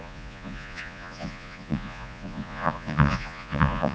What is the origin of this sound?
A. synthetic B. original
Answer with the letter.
A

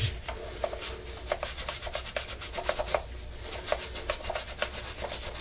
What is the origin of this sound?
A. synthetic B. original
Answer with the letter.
B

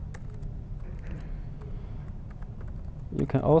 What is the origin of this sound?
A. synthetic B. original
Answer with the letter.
B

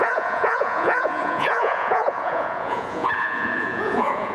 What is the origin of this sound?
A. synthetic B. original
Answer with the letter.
A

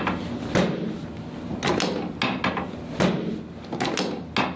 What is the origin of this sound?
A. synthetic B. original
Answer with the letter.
B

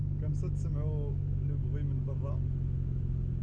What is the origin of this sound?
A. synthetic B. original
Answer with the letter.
B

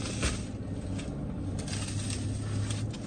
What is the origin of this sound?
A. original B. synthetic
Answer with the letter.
A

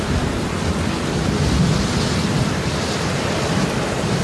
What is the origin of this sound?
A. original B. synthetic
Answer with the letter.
A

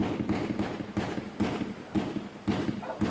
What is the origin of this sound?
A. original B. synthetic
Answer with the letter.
A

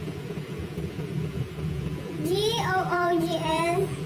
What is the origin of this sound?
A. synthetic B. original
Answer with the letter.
A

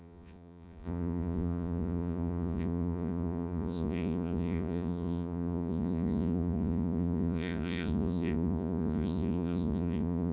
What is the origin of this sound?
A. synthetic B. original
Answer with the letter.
A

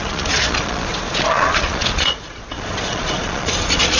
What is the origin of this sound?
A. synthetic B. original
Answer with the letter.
A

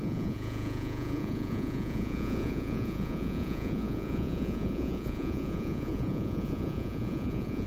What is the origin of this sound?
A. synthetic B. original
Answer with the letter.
A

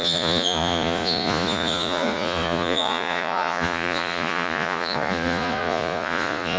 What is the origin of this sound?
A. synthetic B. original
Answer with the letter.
A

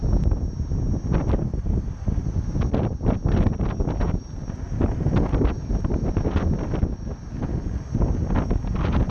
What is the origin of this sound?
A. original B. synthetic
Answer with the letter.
A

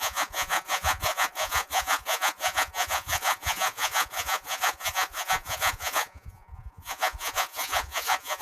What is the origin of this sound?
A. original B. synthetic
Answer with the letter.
B